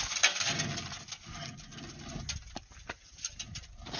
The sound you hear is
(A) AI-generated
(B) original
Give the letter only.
B